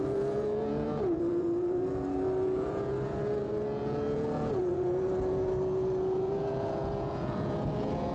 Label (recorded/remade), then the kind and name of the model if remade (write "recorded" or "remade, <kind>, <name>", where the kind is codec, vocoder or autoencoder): remade, vocoder, Vocos